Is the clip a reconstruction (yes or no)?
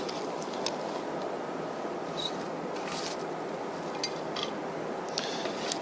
no